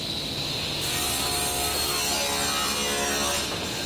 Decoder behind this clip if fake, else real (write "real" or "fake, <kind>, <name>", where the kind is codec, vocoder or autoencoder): real